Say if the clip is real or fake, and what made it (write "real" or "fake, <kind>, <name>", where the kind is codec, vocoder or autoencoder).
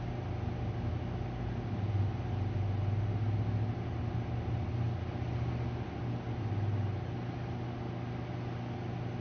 real